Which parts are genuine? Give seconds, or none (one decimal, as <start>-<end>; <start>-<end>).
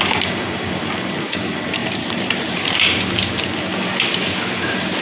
0.0-1.8; 3.0-5.0